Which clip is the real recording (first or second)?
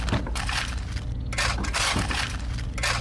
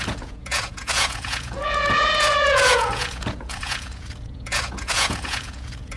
first